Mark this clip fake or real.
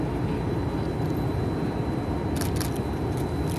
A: real